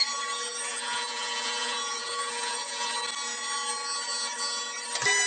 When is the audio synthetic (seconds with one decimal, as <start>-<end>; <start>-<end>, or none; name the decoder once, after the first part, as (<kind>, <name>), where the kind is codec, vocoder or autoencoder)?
0.7-3.0 (vocoder, Vocos)